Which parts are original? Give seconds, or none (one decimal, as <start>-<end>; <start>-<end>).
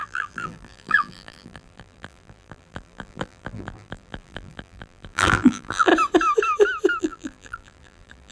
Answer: 5.9-7.0